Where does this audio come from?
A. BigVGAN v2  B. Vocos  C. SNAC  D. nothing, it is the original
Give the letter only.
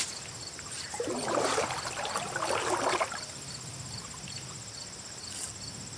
D